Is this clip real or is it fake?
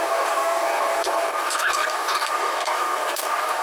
fake